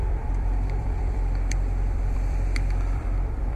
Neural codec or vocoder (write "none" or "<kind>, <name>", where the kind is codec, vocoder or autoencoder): vocoder, BigVGAN v2